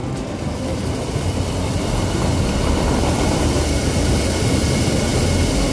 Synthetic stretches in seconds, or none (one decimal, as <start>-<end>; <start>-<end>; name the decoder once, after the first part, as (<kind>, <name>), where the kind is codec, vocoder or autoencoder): none

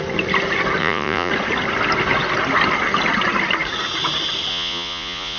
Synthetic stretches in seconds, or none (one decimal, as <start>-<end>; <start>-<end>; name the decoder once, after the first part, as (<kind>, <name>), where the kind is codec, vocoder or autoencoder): 0.8-1.3 (vocoder, Vocos); 4.5-5.4

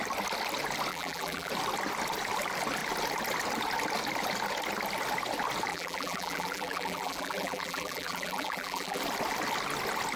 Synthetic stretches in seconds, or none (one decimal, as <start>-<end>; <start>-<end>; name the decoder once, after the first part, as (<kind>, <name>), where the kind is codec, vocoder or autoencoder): 0.9-1.5 (vocoder, BigVGAN v2); 5.7-9.0

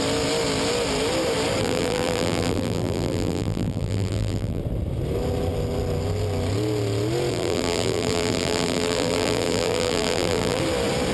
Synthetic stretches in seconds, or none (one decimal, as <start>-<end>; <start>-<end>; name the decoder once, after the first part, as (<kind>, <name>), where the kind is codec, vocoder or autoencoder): 1.6-4.6 (vocoder, BigVGAN v2); 7.3-10.6

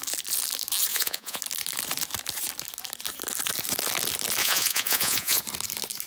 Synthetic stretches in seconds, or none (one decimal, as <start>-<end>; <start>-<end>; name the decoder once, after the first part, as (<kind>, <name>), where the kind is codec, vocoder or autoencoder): 0.9-1.4 (vocoder, Vocos); 4.4-5.4

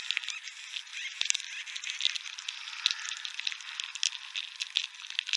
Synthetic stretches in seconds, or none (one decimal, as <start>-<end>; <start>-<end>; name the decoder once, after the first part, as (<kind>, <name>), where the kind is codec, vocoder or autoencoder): none